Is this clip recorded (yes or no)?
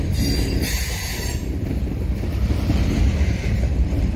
no